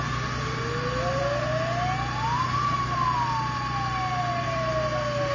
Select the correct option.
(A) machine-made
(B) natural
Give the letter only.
B